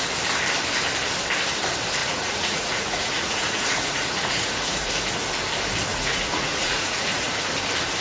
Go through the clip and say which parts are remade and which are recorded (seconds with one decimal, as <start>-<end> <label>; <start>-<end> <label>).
0.0-2.0 recorded; 2.0-4.9 remade; 4.9-5.9 recorded; 5.9-7.3 remade; 7.3-8.0 recorded